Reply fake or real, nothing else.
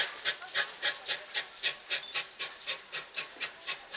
real